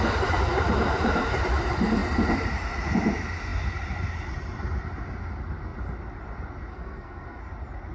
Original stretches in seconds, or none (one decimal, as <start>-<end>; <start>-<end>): 0.0-6.7; 7.4-7.9